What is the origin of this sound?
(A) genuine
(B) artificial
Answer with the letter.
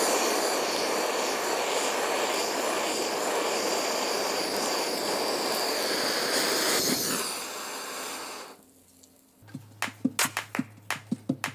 A